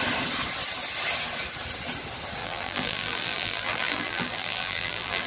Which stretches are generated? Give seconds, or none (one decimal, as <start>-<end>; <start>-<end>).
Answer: 2.4-5.3